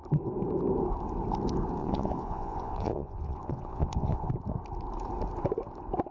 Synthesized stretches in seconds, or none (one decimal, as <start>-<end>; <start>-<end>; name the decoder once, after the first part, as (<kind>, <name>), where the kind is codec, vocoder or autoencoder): 1.8-4.3 (vocoder, Vocos)